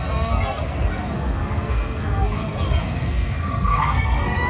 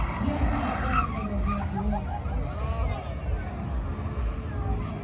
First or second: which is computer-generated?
first